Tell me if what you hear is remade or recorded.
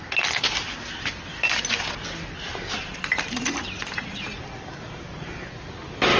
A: recorded